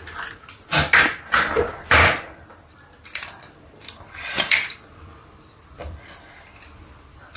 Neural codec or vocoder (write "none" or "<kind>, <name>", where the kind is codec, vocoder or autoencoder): vocoder, BigVGAN v2